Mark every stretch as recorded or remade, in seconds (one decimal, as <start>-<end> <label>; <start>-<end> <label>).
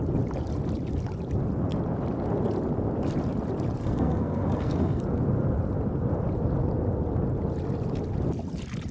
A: 0.0-3.8 recorded; 3.8-5.0 remade; 5.0-8.9 recorded